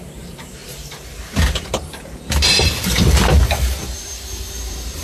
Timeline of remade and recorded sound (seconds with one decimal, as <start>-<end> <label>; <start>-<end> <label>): 0.0-5.0 remade